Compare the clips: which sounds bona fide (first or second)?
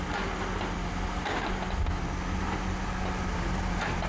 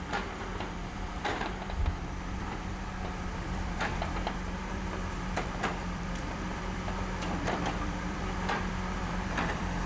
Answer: first